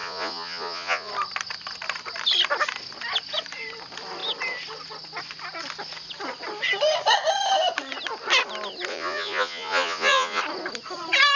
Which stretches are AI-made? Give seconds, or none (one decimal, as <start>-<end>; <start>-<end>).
0.0-1.1; 8.9-10.4